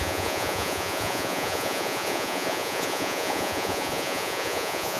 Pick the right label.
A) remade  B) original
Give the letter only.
A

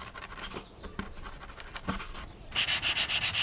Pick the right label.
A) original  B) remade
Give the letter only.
A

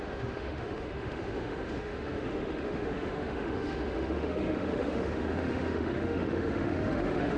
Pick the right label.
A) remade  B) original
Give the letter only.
A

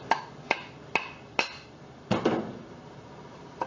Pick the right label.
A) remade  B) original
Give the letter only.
B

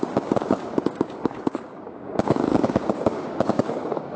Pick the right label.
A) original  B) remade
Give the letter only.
B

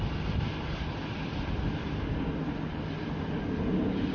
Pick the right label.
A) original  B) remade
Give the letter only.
A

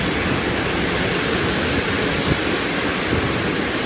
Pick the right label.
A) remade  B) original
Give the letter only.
B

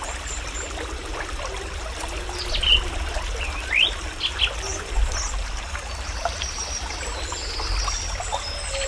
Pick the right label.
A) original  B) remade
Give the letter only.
A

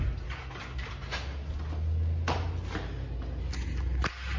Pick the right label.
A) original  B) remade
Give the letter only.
A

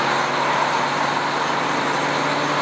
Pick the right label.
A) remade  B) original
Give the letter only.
B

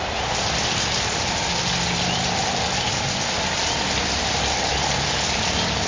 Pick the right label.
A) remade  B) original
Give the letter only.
B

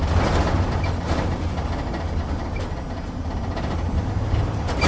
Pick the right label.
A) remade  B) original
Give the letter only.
B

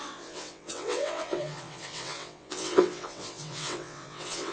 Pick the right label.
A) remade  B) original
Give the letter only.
A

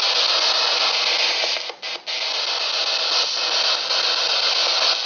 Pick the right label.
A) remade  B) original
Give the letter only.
B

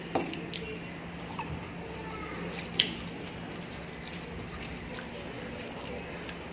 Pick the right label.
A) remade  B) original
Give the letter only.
B